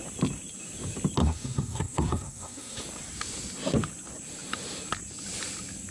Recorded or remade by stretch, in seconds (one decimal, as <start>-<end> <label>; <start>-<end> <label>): 0.0-1.2 recorded; 1.2-2.8 remade; 2.8-5.9 recorded